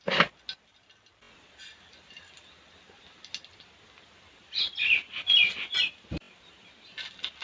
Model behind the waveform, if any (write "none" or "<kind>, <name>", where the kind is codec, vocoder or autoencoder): none